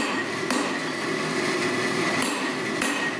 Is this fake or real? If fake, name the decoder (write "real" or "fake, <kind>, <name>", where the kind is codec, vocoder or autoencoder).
real